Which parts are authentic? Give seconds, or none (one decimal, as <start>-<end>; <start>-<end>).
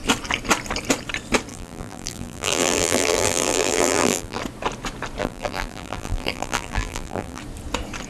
0.0-1.5; 4.4-5.2; 7.4-8.1